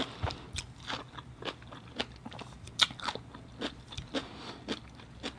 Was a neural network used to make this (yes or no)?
no